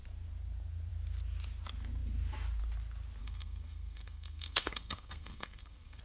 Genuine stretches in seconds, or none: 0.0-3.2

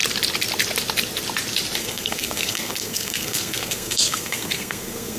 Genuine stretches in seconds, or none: 0.0-1.8